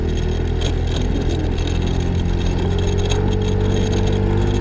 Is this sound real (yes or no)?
yes